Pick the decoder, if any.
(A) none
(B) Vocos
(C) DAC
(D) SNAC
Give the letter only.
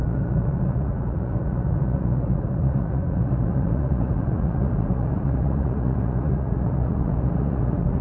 B